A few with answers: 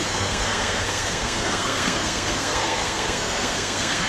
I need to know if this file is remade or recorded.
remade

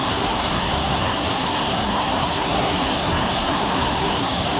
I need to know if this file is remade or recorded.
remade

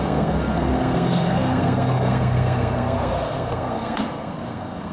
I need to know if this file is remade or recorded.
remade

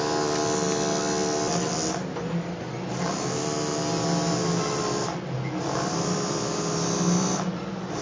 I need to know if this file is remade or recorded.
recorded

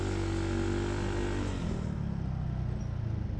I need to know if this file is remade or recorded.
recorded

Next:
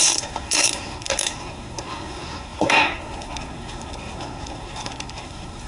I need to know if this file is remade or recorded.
remade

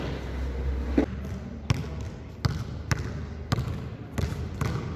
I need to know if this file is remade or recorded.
recorded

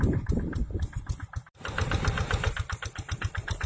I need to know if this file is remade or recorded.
recorded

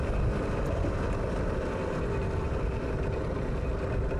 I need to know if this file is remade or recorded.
recorded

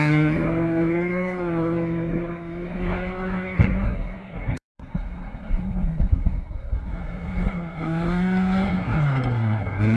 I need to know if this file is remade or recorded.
remade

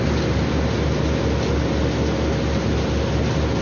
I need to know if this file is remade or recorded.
recorded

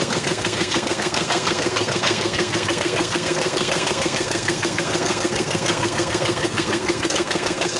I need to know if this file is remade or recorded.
remade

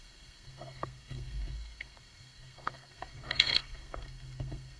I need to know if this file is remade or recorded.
remade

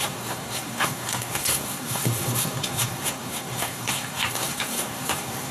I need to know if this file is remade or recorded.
remade